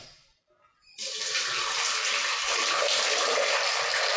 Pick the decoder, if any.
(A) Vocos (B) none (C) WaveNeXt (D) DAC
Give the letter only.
B